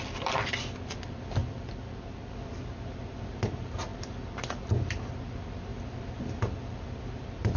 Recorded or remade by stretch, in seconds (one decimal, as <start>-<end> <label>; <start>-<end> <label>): 0.0-7.6 recorded